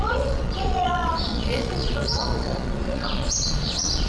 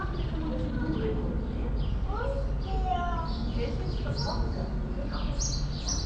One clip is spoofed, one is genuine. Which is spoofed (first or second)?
first